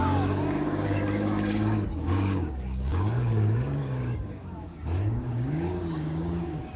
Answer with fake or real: fake